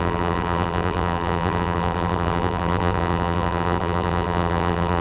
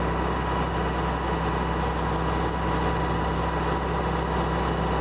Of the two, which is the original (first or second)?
second